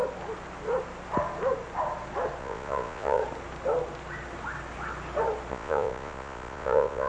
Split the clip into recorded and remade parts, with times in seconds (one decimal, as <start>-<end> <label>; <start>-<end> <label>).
0.0-2.4 recorded; 2.4-3.2 remade; 3.2-5.5 recorded; 5.5-7.1 remade